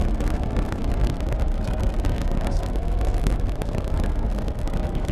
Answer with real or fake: fake